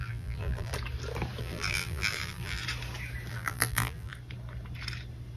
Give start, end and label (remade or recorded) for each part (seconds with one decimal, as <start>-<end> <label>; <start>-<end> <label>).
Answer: 0.0-0.7 remade; 0.7-1.4 recorded; 1.4-2.6 remade; 2.6-3.3 recorded; 3.3-4.1 remade; 4.1-5.4 recorded